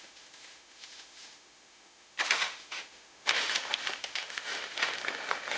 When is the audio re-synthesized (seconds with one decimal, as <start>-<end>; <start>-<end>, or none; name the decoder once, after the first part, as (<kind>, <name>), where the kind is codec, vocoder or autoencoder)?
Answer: 0.0-5.6 (autoencoder, DAC-VAE)